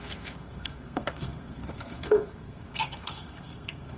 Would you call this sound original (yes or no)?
no